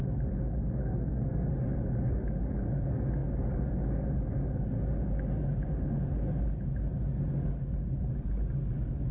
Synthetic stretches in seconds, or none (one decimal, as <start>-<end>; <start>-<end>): 0.8-1.5